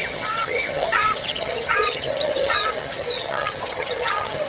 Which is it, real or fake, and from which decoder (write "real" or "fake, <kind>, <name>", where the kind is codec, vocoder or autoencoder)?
fake, vocoder, HiFi-GAN